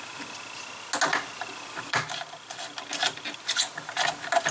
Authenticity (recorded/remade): recorded